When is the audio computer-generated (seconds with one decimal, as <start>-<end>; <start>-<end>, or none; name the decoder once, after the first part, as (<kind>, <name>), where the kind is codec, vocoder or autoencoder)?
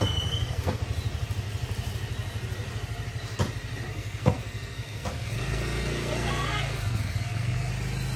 0.0-0.8 (codec, SNAC); 3.9-7.7